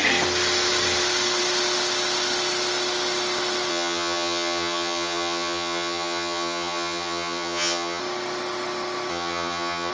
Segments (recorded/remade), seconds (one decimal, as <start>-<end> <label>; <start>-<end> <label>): 0.0-3.7 recorded; 3.7-8.0 remade; 8.0-9.1 recorded; 9.1-9.9 remade